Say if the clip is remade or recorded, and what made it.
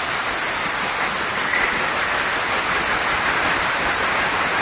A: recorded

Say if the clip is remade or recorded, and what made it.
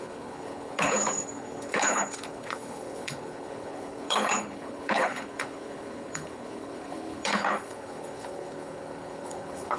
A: remade, codec, HILCodec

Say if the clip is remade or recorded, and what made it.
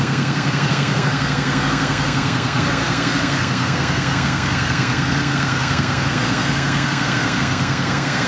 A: remade, codec, SNAC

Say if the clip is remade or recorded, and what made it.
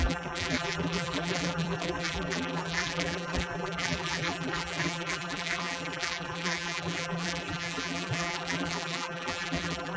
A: remade, vocoder, BigVGAN v2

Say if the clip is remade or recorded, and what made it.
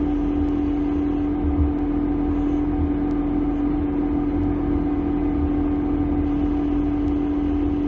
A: recorded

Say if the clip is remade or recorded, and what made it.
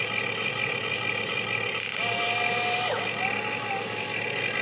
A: recorded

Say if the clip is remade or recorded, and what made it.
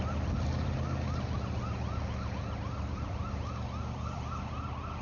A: recorded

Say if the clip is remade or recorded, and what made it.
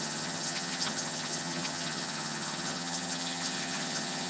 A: remade, vocoder, HiFi-GAN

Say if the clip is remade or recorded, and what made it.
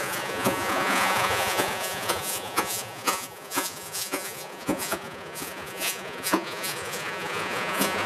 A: remade, vocoder, Vocos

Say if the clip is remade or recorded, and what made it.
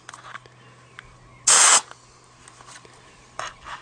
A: recorded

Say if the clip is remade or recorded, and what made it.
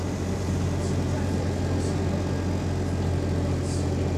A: recorded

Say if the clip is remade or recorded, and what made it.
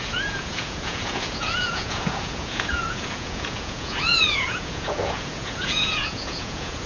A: remade, vocoder, Vocos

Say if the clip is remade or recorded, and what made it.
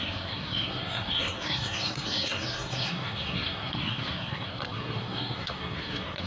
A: remade, codec, SNAC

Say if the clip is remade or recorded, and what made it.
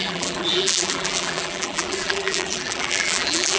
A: remade, vocoder, BigVGAN v2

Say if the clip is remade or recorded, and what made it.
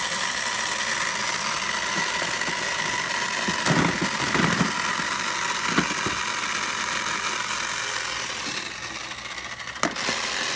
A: recorded